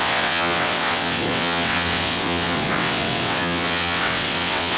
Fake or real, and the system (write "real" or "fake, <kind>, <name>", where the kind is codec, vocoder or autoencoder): fake, vocoder, WaveNeXt